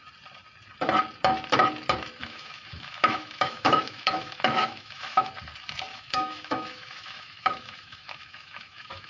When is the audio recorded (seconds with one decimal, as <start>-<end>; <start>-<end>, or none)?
0.0-2.2; 5.3-5.9

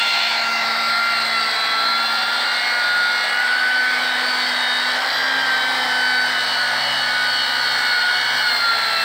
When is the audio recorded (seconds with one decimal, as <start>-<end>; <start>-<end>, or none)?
1.0-3.4; 4.0-9.0

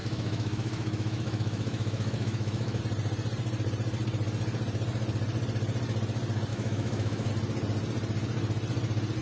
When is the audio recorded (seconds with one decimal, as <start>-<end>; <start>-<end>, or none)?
2.8-6.5; 7.3-9.2

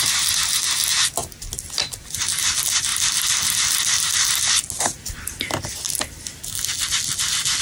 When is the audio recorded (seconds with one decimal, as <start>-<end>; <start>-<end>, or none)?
0.0-7.6

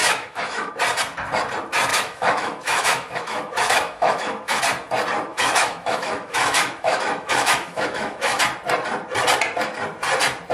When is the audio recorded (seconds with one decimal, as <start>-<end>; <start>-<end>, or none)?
0.7-1.9; 4.6-5.3; 8.4-10.5

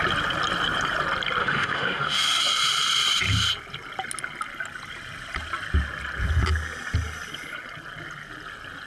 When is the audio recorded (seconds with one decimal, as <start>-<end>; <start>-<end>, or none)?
0.0-1.4; 2.4-8.9

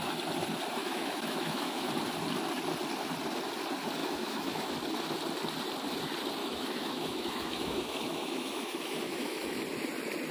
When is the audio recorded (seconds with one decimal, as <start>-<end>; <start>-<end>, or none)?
0.0-0.8; 1.9-4.0; 4.7-6.4; 9.6-10.3